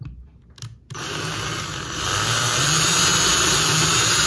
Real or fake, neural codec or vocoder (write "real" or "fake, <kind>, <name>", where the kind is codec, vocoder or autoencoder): real